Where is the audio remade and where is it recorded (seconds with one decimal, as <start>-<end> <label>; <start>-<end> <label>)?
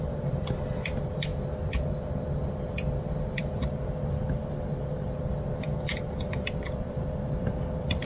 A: 0.0-1.3 remade; 1.3-3.4 recorded; 3.4-8.0 remade